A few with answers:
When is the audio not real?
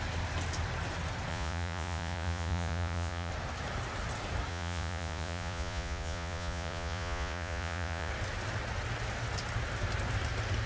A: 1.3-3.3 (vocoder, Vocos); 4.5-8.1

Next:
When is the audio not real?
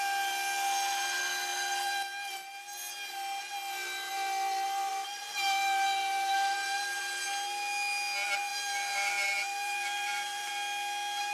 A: 4.9-7.0 (vocoder, BigVGAN v2); 8.5-10.5